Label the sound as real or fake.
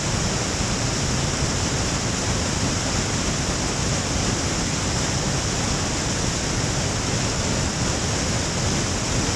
real